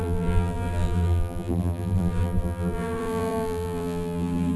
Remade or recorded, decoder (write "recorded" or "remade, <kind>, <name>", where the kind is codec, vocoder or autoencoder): remade, vocoder, BigVGAN v2